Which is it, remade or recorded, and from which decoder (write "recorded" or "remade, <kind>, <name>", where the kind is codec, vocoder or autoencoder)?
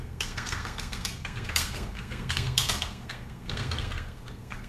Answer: remade, codec, SNAC